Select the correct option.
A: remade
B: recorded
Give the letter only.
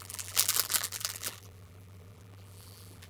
A